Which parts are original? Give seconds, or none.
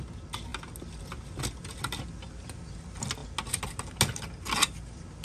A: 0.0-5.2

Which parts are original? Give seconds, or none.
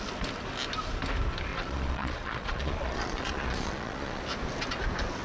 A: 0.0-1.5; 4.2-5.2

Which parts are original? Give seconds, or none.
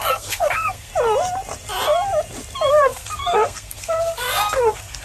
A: 0.9-2.7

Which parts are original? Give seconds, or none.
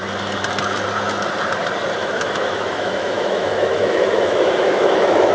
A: 0.0-2.0